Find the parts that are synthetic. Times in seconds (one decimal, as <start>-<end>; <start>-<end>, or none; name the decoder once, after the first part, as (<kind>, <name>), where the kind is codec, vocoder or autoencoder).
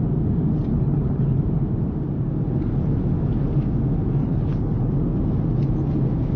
0.7-1.4 (codec, HILCodec); 4.2-4.9